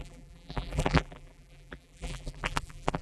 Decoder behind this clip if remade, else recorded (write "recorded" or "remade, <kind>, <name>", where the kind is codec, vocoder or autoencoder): remade, vocoder, BigVGAN v2